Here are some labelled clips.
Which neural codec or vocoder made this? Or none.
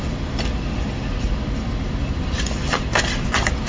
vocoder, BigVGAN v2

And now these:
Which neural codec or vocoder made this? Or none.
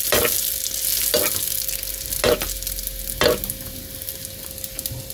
none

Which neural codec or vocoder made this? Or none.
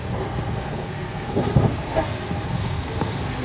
codec, SNAC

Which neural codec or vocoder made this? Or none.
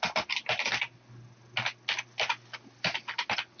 none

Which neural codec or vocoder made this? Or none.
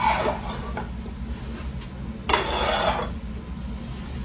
none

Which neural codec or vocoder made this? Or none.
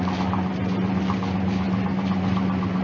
none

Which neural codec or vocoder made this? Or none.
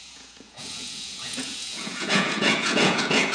vocoder, Vocos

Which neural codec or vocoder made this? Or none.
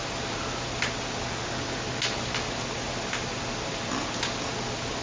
none